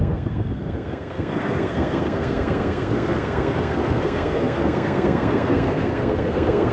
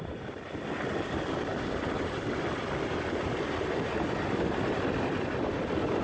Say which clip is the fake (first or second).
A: first